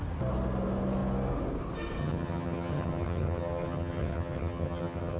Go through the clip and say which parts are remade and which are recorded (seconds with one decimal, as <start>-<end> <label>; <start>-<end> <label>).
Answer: 0.0-2.0 recorded; 2.0-5.2 remade

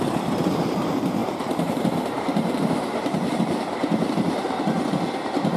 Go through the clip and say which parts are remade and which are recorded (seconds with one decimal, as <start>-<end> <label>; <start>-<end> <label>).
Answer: 0.0-1.2 recorded; 1.2-4.6 remade; 4.6-5.6 recorded

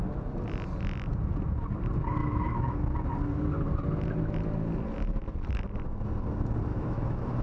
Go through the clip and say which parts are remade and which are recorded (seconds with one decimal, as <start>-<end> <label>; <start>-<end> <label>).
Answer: 0.0-2.2 recorded; 2.2-2.8 remade; 2.8-6.7 recorded; 6.7-7.4 remade

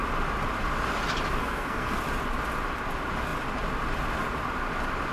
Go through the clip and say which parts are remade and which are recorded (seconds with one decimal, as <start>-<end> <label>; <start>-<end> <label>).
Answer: 0.0-1.4 recorded; 1.4-2.0 remade; 2.0-5.1 recorded

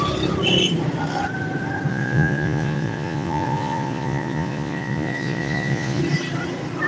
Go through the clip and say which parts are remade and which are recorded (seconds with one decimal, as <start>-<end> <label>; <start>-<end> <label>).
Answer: 0.0-1.9 recorded; 1.9-6.0 remade; 6.0-6.9 recorded

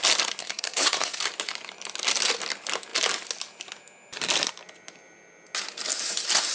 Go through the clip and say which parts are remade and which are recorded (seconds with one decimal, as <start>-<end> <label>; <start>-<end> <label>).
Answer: 0.0-0.4 recorded; 0.4-1.2 remade; 1.2-6.5 recorded

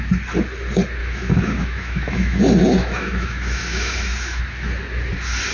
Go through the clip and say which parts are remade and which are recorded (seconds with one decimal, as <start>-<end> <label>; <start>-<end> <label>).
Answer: 0.0-1.0 recorded; 1.0-2.4 remade; 2.4-2.8 recorded; 2.8-4.4 remade; 4.4-5.5 recorded